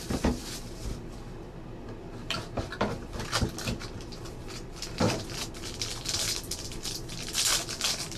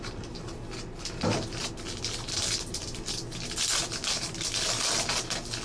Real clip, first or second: second